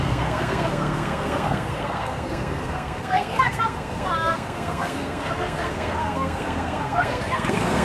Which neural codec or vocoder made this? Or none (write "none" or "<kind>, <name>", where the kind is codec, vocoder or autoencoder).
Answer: codec, SNAC